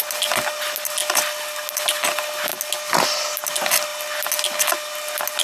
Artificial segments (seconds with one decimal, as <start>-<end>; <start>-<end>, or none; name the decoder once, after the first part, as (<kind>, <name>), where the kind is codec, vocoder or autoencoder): none